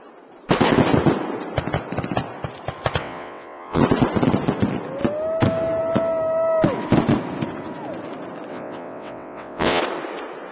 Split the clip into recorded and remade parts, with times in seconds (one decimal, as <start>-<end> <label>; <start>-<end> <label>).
0.0-3.0 recorded; 3.0-3.8 remade; 3.8-8.5 recorded; 8.5-9.8 remade; 9.8-10.5 recorded